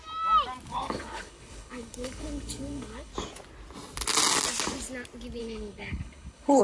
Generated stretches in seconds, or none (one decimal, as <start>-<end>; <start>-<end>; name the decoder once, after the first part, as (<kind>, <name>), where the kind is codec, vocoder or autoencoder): 0.7-3.1 (codec, HILCodec); 5.4-6.6